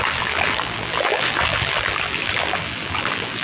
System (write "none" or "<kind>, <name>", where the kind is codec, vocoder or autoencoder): vocoder, BigVGAN v2